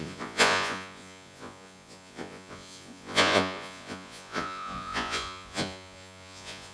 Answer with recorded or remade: remade